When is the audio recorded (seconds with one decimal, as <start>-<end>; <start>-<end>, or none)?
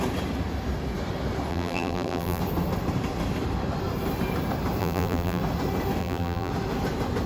0.0-1.5; 2.4-4.8; 5.4-6.0; 6.5-7.3